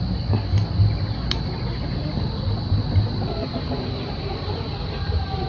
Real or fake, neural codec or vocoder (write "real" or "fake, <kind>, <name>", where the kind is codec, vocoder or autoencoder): real